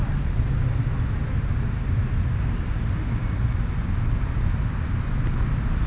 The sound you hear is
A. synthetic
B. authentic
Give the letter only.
B